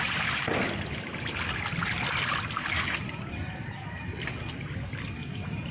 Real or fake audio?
real